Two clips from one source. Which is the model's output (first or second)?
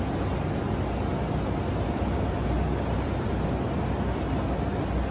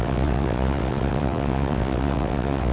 second